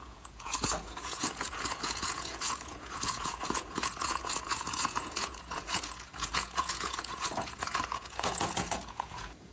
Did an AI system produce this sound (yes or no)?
yes